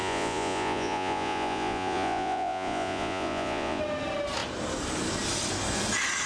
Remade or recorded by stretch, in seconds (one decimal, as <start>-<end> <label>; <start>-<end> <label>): 0.0-3.8 remade; 3.8-6.3 recorded